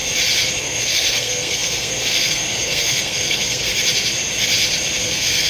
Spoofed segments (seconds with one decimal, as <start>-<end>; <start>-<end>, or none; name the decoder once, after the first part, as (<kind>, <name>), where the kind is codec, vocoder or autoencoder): 0.6-3.7 (codec, SNAC); 5.0-5.5